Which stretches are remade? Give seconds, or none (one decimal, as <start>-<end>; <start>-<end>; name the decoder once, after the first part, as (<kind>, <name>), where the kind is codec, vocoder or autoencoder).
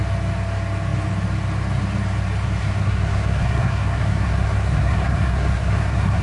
2.6-6.2 (codec, SNAC)